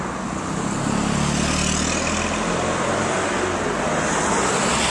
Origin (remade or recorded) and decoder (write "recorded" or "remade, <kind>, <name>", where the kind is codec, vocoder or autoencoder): recorded